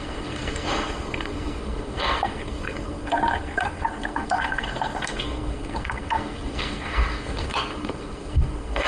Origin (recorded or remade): remade